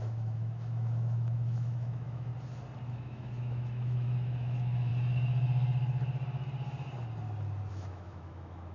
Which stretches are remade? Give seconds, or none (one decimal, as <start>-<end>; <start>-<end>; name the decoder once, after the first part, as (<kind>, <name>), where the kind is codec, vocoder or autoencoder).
0.0-2.3 (autoencoder, DAC-VAE); 2.9-4.9; 7.7-8.7